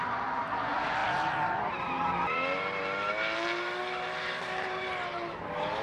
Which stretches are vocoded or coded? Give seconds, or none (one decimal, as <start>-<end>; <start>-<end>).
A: none

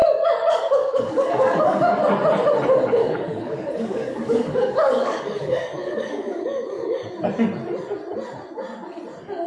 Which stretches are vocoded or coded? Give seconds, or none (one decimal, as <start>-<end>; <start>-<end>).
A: 0.0-2.0; 3.0-7.1

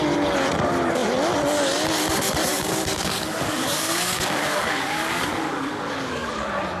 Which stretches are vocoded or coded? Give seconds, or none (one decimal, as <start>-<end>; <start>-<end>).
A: 2.5-6.3